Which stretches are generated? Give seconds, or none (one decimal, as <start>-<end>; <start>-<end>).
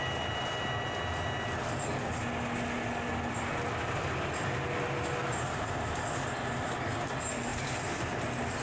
none